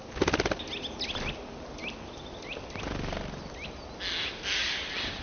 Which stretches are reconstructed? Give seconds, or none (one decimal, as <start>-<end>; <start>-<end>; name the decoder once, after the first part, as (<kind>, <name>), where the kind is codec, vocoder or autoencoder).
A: none